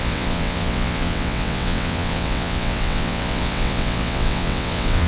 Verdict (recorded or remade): remade